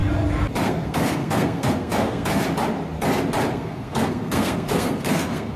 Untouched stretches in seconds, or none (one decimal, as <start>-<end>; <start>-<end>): 0.0-0.6; 2.3-3.5